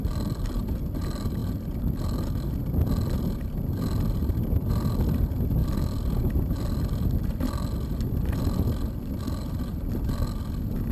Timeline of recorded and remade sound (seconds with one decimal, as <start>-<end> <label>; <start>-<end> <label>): 0.0-10.9 recorded